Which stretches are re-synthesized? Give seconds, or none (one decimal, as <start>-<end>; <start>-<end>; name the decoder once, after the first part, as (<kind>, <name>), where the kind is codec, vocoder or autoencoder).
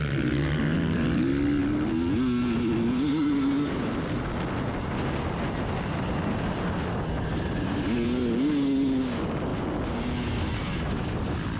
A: none